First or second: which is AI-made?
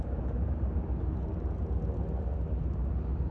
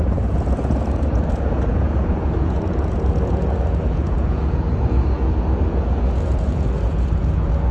second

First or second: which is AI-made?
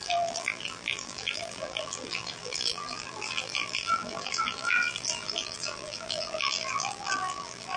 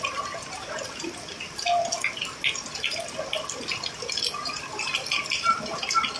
first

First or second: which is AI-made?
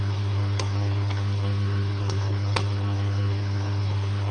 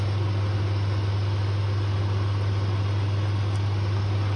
first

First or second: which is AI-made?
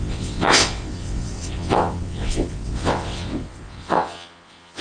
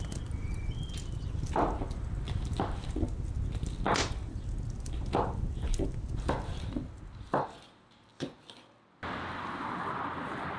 first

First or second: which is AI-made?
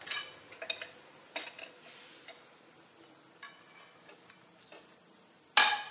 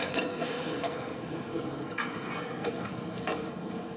second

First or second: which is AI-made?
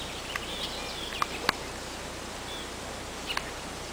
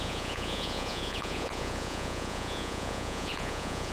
second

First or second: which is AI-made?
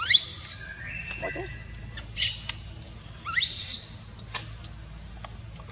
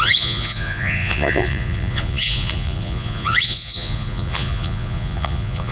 second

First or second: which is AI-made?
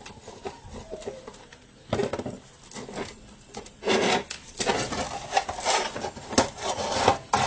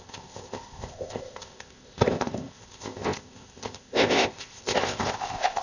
second